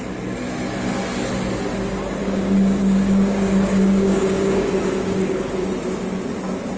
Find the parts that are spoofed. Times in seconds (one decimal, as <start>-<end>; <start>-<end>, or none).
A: 2.2-5.5